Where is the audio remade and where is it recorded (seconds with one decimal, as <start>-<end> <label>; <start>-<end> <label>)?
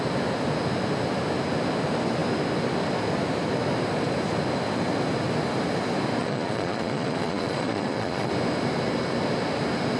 0.0-6.2 recorded; 6.2-8.3 remade; 8.3-10.0 recorded